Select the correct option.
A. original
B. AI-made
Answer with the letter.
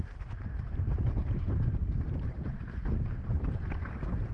B